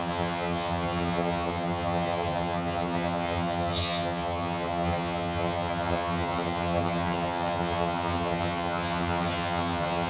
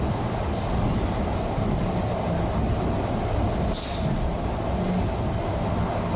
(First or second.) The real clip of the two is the second